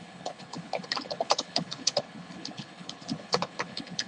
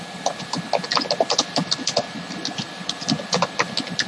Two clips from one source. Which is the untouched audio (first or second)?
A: second